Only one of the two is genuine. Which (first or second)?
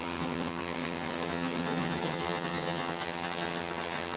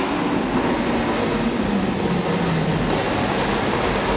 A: second